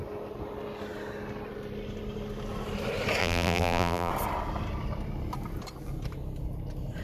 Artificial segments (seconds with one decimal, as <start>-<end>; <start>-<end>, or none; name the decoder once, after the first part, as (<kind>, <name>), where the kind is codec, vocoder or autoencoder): 3.2-4.1 (vocoder, BigVGAN v2)